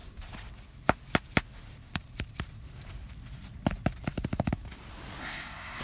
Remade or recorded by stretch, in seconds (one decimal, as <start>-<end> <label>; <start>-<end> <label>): 0.0-5.2 recorded; 5.2-5.8 remade